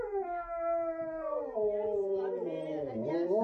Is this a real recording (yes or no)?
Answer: yes